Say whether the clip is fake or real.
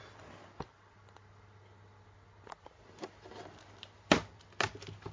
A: real